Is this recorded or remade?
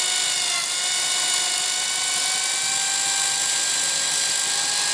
recorded